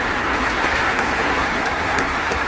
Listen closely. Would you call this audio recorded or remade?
remade